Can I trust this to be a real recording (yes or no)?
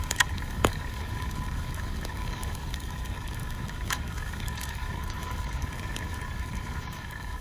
no